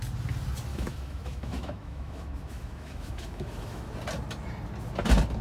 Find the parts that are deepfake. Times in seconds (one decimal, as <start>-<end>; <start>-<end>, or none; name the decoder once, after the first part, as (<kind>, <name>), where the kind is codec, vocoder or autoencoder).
0.7-3.9 (autoencoder, DAC-VAE)